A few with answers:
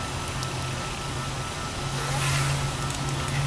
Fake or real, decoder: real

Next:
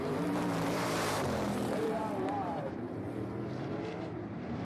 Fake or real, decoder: fake, vocoder, BigVGAN v2